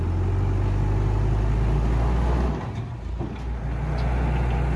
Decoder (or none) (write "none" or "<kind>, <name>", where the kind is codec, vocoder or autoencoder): none